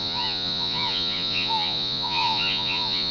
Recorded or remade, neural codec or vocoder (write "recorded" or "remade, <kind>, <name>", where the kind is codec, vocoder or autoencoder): remade, vocoder, Vocos